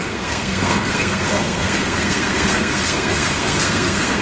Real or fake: fake